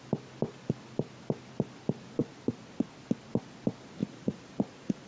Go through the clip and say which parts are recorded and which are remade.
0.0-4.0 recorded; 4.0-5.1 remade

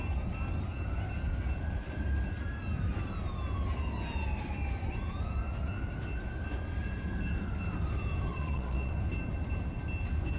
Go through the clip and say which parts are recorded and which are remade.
0.0-8.3 recorded; 8.3-8.9 remade; 8.9-10.4 recorded